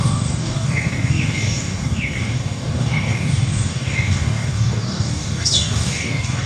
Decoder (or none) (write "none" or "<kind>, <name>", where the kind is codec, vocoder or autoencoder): codec, DAC